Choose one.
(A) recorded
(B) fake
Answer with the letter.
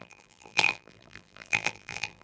B